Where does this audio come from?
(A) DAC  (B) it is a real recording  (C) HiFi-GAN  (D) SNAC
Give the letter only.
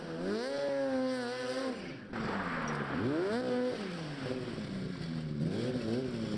B